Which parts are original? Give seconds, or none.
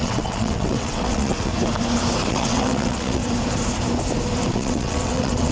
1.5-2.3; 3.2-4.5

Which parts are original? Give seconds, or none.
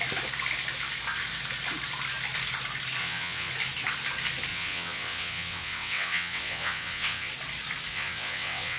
0.0-3.0; 3.5-4.5; 7.3-7.9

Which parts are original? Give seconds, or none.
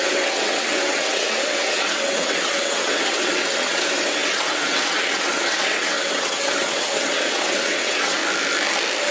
8.2-9.1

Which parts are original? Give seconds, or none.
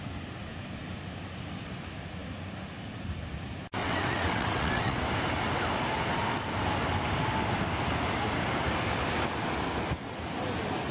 0.0-3.8; 5.0-10.9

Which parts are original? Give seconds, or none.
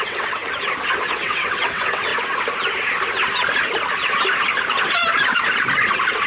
0.4-1.1; 2.1-6.3